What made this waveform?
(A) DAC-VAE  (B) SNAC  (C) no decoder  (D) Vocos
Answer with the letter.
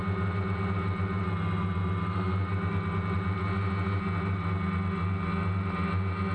C